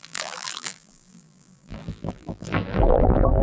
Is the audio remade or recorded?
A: remade